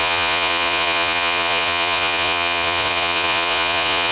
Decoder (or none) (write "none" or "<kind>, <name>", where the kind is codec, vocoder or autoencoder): vocoder, Vocos